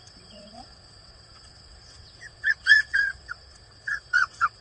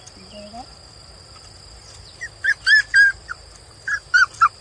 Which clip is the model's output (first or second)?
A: first